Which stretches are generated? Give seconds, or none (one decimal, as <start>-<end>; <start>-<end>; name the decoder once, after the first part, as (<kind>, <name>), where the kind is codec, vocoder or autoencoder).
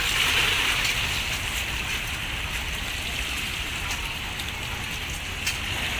none